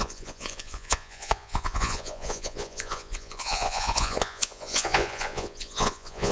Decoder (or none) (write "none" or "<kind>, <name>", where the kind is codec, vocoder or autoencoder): vocoder, Vocos